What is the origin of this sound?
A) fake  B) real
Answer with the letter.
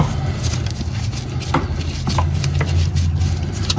B